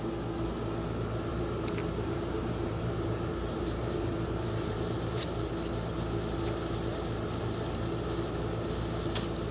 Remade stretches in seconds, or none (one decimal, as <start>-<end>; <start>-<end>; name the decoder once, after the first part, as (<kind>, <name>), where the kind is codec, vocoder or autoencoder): 1.3-5.5 (vocoder, BigVGAN v2)